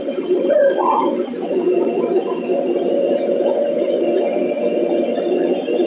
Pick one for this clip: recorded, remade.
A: remade